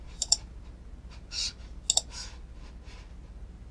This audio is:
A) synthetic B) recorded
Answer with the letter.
B